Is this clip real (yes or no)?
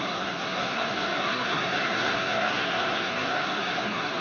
no